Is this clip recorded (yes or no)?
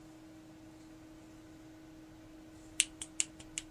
yes